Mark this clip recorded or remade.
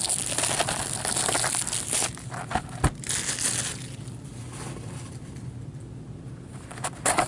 recorded